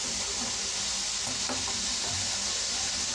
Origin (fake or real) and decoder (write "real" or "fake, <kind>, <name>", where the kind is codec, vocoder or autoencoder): real